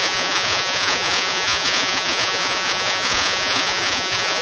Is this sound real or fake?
fake